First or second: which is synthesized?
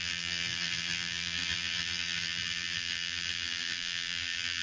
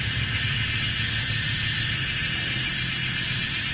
first